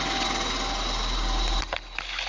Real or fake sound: real